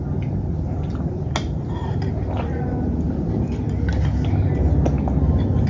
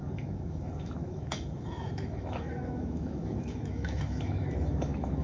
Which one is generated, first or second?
second